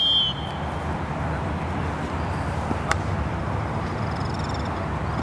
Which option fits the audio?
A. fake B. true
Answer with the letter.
B